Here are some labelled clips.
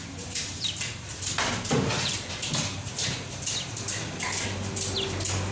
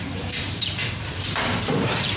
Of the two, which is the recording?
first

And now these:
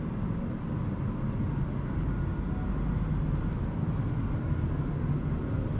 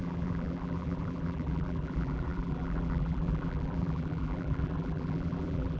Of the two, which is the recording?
first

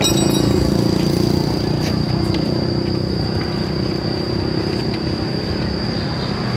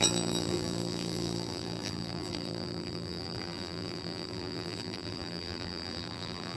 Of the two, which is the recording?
first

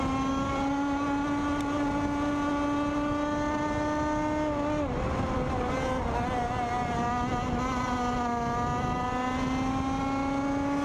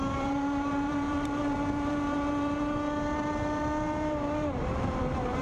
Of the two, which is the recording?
first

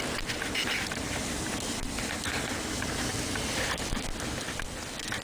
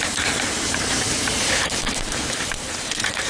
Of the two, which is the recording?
first